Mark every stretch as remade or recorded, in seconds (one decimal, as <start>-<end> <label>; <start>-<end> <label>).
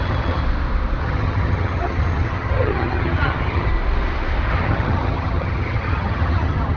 0.0-0.4 remade; 0.4-1.0 recorded; 1.0-3.7 remade; 3.7-4.5 recorded; 4.5-6.8 remade